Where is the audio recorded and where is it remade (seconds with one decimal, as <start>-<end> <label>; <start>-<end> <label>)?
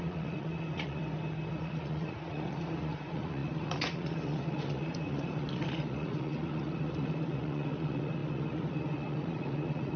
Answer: 0.0-1.0 remade; 1.0-1.5 recorded; 1.5-10.0 remade